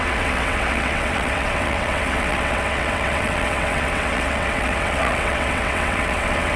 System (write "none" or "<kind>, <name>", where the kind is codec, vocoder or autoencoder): vocoder, WaveNeXt